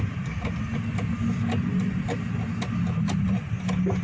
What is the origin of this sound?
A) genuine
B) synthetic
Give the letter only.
A